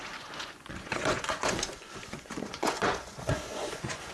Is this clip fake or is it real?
fake